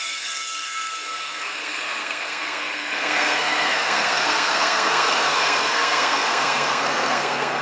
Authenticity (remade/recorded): remade